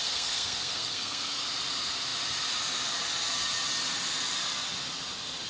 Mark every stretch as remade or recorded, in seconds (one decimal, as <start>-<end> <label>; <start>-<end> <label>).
0.0-1.4 remade; 1.4-5.5 recorded